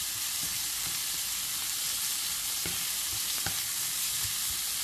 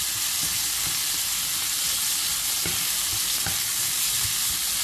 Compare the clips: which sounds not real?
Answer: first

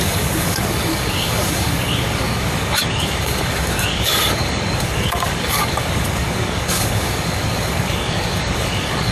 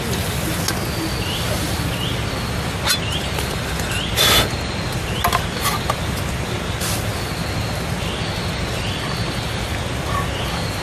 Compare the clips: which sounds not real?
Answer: first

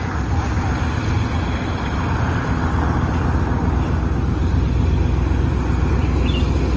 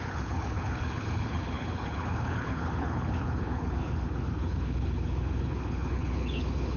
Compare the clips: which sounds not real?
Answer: second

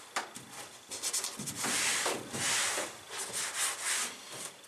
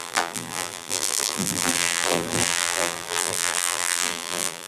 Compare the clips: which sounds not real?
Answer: second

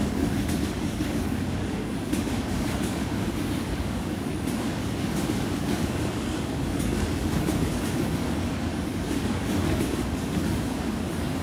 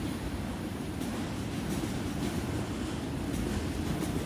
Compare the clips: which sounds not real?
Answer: first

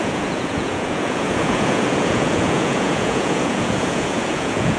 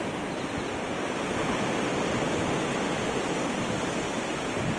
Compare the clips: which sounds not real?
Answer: first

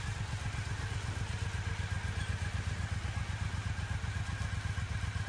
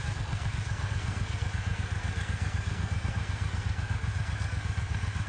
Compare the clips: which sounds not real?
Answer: second